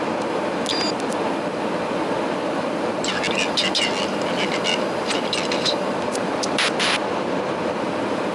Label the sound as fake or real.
fake